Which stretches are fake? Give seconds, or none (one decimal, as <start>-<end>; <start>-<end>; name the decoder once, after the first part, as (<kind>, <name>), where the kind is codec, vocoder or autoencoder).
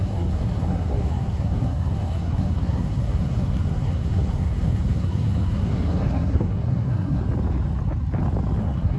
0.0-7.2 (codec, SNAC); 8.6-9.0